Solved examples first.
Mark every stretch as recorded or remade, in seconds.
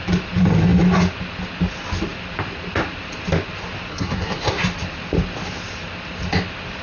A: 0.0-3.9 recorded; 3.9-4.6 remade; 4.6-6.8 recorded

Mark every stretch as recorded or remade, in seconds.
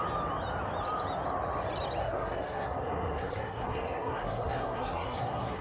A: 0.0-2.0 recorded; 2.0-5.6 remade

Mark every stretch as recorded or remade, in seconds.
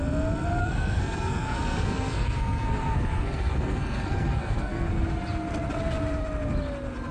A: 0.0-0.6 recorded; 0.6-4.9 remade; 4.9-7.1 recorded